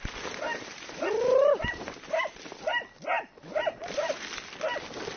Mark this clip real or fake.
real